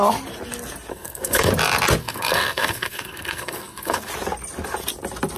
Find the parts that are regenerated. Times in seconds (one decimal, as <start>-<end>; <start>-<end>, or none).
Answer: 0.9-1.5; 2.0-4.1